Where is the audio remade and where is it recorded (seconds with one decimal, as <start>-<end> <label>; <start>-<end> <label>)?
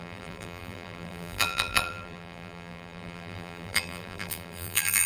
0.0-5.1 remade